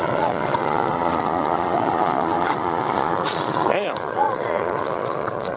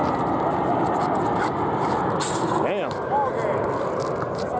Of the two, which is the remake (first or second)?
first